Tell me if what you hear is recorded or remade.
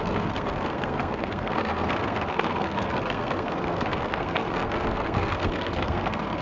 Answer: remade